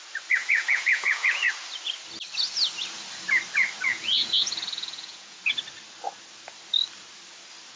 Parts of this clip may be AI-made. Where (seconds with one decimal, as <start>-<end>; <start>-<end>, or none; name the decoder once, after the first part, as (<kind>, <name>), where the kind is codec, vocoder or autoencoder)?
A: 0.4-1.5 (vocoder, Vocos); 3.9-5.4